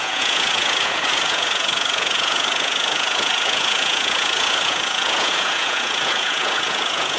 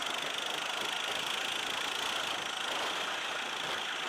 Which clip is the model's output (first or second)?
first